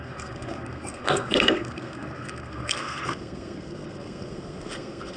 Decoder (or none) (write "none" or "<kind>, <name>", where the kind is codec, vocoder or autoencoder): codec, SNAC